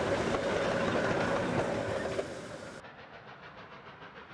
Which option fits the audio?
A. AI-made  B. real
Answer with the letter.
B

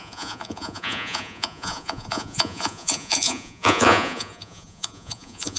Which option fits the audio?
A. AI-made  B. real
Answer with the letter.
A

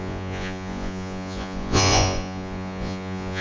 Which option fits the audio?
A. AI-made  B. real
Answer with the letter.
A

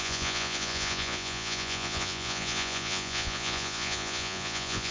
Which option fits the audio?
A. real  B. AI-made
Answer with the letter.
B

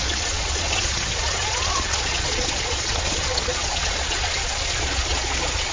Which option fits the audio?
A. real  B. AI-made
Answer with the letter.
B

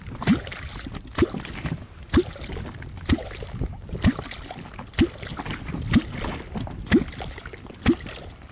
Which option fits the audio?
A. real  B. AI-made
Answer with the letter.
A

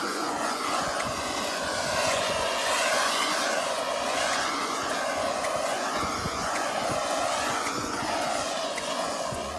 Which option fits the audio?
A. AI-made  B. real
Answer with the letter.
A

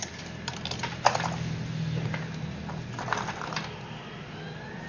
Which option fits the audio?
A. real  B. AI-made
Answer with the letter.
A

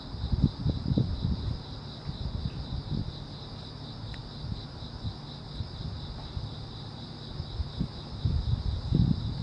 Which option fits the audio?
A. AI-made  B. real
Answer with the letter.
B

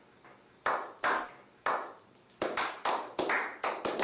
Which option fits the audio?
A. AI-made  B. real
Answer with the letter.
B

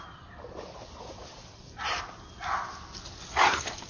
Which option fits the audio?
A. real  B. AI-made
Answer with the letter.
A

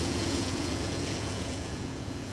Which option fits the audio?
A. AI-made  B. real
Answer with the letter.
A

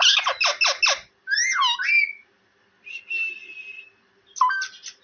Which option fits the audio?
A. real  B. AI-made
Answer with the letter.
A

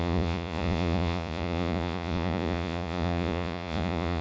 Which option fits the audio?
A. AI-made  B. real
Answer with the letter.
A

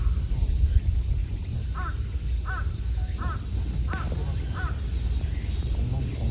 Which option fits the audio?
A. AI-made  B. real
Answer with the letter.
B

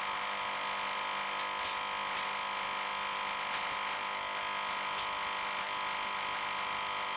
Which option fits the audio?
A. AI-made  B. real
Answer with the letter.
B